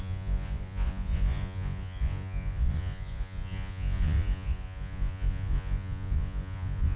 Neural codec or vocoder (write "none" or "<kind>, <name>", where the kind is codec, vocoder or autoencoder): vocoder, Vocos